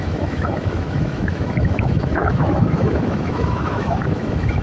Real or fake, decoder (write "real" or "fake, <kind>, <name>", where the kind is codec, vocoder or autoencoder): fake, autoencoder, DAC-VAE